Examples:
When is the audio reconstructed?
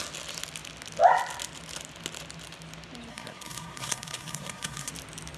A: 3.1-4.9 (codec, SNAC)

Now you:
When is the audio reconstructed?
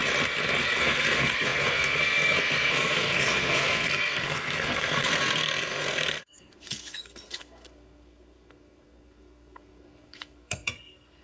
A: 0.6-11.2 (codec, SNAC)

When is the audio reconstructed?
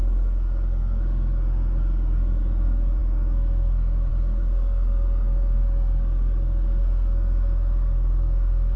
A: 0.0-8.8 (codec, SNAC)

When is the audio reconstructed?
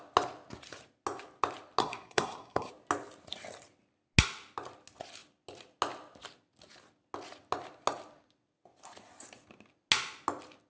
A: 1.8-2.7 (codec, SNAC)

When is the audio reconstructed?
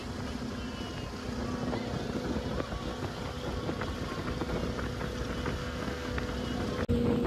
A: 5.6-6.3 (codec, SNAC)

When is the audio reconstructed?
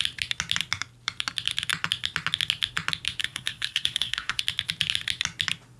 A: 3.2-4.4 (codec, SNAC)